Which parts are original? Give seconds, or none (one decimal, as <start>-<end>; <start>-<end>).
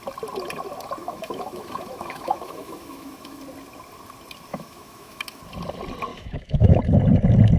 0.0-1.0; 3.4-4.5; 5.4-6.1; 6.8-7.6